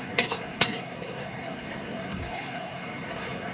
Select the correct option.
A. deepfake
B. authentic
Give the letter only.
A